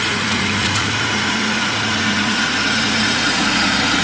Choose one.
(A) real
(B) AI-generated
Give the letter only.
B